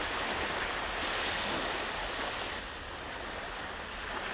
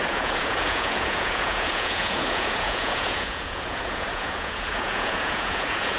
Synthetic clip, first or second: second